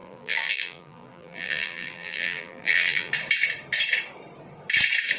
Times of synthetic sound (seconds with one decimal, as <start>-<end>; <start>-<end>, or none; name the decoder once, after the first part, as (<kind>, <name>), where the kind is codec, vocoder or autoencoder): 0.0-3.1 (vocoder, BigVGAN v2)